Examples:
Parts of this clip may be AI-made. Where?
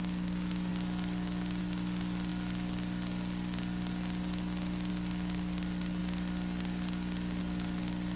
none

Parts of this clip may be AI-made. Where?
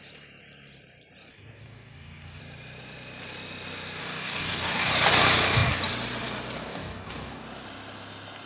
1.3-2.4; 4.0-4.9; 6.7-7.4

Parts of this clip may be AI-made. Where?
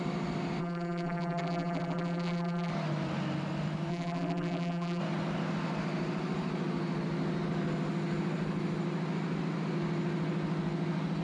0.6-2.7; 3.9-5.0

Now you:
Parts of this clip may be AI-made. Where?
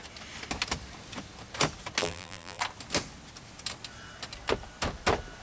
2.0-2.6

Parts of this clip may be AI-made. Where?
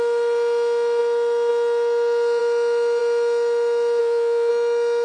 4.0-4.5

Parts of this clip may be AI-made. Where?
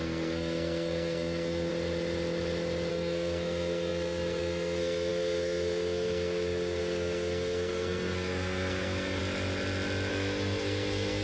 0.0-1.7; 2.9-9.2; 10.1-11.2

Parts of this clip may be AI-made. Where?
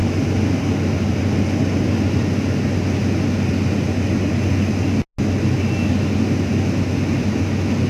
none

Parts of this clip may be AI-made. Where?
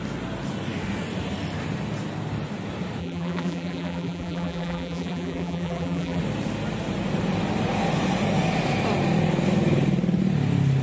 3.0-6.2